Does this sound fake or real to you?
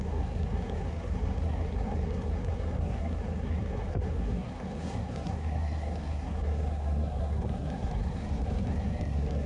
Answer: fake